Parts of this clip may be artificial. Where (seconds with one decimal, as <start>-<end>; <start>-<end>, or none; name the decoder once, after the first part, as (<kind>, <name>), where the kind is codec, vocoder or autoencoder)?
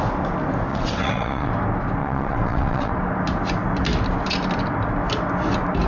0.7-1.5 (vocoder, WaveNeXt); 2.0-2.9